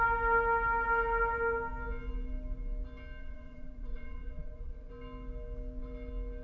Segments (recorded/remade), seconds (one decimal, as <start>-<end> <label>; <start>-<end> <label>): 0.0-3.2 recorded; 3.2-4.9 remade; 4.9-6.4 recorded

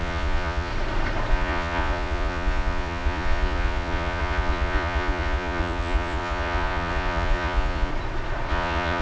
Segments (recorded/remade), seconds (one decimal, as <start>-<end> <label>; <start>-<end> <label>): 0.0-0.7 remade; 0.7-1.3 recorded; 1.3-7.9 remade; 7.9-8.5 recorded; 8.5-9.0 remade

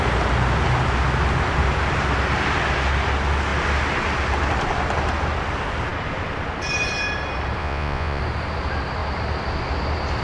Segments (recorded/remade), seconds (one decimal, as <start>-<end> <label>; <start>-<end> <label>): 0.0-7.6 recorded; 7.6-8.2 remade; 8.2-10.2 recorded

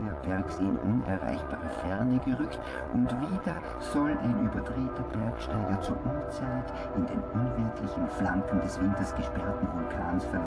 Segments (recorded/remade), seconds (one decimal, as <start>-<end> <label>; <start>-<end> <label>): 0.0-3.8 remade; 3.8-5.1 recorded; 5.1-5.9 remade; 5.9-10.5 recorded

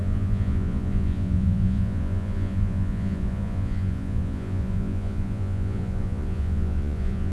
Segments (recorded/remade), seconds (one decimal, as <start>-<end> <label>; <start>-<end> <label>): 0.0-7.3 remade